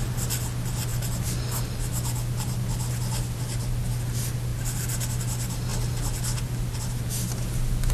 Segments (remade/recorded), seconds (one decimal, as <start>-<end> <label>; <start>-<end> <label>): 0.0-7.9 recorded